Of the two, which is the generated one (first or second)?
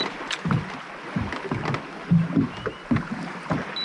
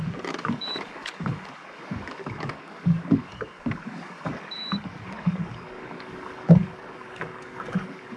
second